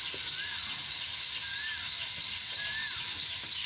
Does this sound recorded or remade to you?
recorded